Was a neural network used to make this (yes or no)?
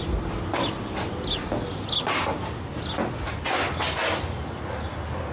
no